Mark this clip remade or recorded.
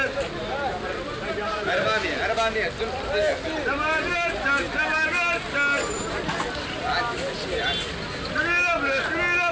recorded